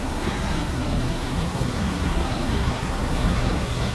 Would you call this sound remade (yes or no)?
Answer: yes